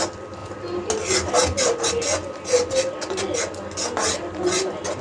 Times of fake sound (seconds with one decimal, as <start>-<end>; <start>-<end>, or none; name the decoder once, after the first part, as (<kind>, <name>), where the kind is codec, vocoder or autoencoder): none